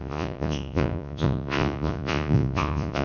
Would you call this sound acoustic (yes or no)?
no